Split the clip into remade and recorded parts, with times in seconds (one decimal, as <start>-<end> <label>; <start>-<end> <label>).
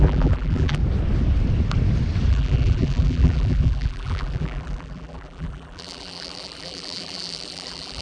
0.0-0.8 remade; 0.8-2.3 recorded; 2.3-8.0 remade